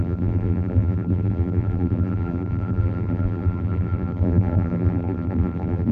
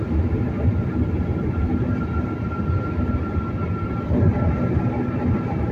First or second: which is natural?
second